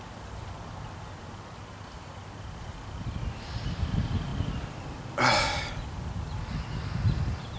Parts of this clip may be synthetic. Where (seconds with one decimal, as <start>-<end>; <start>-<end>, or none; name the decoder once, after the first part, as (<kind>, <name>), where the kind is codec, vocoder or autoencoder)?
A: none